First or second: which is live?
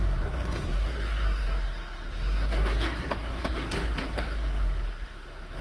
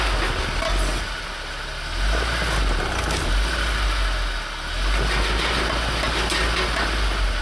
second